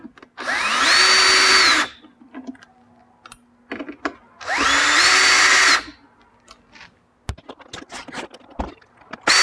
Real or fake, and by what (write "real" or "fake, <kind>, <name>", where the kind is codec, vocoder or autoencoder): real